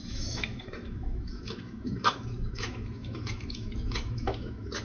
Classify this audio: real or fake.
fake